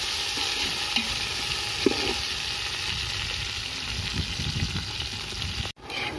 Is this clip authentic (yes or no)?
yes